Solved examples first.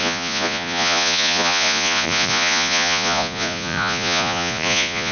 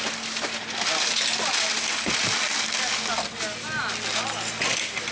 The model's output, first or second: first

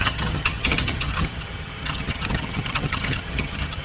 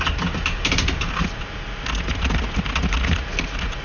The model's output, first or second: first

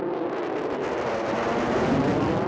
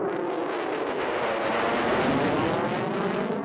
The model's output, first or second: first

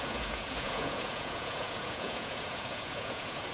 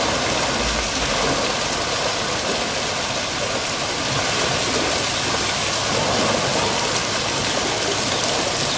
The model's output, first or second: first